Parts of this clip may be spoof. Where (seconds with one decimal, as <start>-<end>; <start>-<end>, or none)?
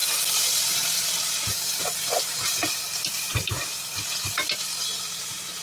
none